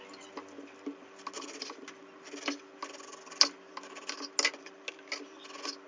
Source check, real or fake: real